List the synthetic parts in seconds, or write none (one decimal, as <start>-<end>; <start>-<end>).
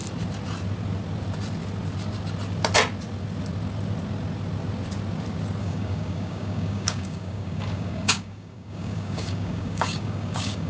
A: 5.6-10.7